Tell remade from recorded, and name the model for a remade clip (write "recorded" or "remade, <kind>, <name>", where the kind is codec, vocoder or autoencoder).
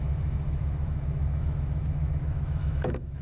remade, autoencoder, DAC-VAE